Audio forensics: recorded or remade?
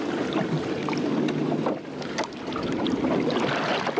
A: recorded